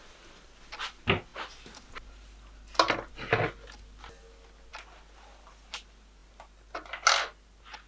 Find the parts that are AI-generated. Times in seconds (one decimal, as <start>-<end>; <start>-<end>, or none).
none